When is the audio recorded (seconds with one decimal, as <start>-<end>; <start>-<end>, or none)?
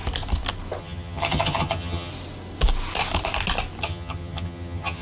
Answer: 0.0-0.8; 2.1-3.8